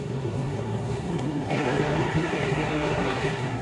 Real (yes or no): no